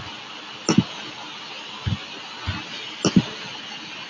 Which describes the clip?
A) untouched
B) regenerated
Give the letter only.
A